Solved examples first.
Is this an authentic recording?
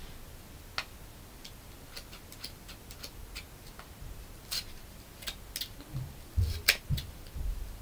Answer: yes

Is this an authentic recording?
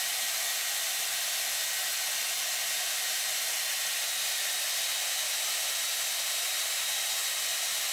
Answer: no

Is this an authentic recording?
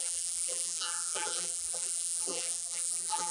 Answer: no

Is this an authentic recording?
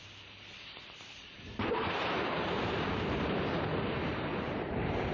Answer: no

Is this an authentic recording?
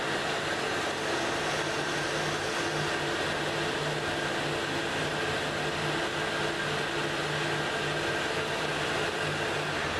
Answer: yes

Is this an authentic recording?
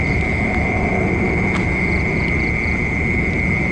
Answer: yes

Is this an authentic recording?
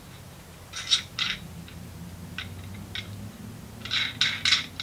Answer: yes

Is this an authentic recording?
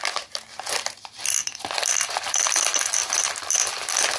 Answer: no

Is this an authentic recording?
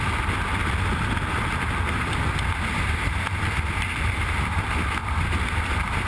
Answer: yes